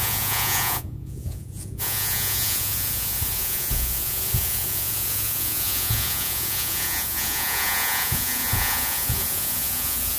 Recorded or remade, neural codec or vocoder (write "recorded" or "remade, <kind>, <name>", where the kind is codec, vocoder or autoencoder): remade, vocoder, Vocos